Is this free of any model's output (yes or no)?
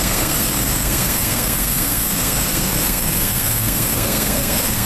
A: no